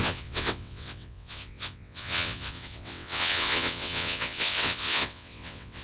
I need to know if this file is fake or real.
fake